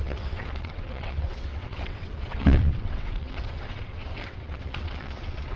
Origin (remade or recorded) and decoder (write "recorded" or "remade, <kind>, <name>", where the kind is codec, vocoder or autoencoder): remade, vocoder, WaveNeXt